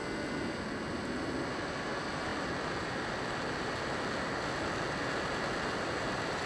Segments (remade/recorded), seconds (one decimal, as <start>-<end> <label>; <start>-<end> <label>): 0.0-0.9 remade; 0.9-6.5 recorded